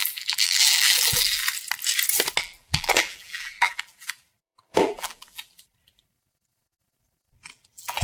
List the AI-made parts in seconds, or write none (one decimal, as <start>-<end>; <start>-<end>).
0.0-1.4; 2.4-8.0